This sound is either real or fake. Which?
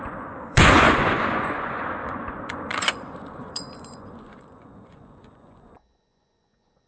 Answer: fake